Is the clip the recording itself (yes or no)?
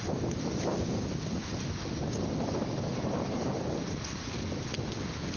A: yes